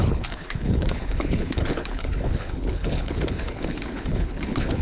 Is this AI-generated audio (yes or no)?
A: yes